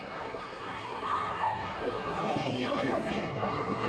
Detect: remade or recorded remade